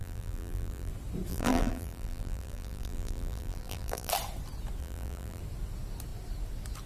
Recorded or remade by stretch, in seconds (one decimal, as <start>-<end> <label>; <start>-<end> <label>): 0.0-0.9 remade; 0.9-1.3 recorded; 1.3-4.1 remade; 4.1-4.8 recorded; 4.8-5.4 remade; 5.4-6.9 recorded